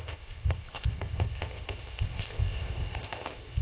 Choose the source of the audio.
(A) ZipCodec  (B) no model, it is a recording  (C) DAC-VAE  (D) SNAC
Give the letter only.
A